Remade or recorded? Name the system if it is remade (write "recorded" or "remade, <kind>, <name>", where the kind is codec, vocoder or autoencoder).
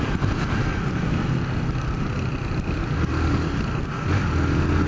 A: recorded